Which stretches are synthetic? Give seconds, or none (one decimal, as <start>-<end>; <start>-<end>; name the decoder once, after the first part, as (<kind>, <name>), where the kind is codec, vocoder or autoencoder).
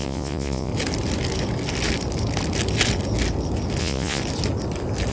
0.0-0.7 (vocoder, Vocos); 3.8-4.2